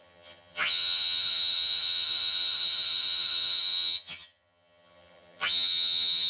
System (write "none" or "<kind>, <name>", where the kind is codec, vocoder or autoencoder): vocoder, HiFi-GAN